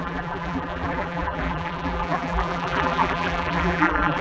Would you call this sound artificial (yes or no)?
yes